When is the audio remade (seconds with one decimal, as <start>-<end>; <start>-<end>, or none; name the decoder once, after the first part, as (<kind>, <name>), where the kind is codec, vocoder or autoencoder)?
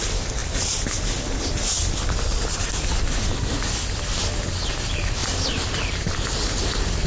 none